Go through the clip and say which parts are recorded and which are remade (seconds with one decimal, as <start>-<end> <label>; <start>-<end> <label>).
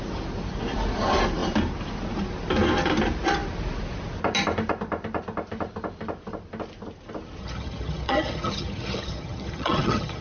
0.0-7.4 recorded; 7.4-10.2 remade